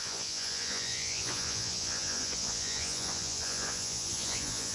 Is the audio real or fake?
fake